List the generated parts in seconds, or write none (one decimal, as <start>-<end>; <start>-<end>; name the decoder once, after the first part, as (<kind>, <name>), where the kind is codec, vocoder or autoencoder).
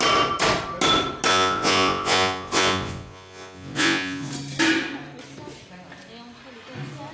1.3-4.3 (vocoder, Vocos)